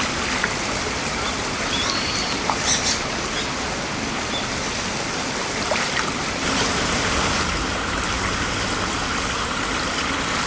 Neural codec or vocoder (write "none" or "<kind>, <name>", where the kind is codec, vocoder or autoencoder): none